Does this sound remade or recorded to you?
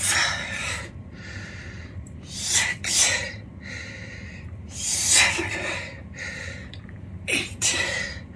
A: remade